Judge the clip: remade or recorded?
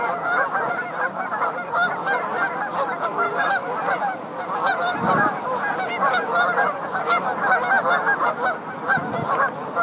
recorded